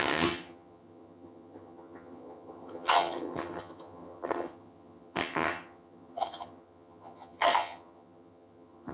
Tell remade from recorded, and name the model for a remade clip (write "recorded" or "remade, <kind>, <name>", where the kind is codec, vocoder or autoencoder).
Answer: remade, vocoder, HiFi-GAN